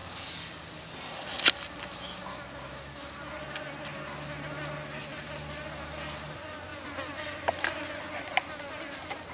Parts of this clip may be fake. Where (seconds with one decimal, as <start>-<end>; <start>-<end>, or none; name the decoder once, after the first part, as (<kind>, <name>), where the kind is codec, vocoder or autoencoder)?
none